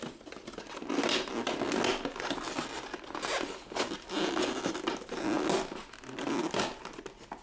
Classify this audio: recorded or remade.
recorded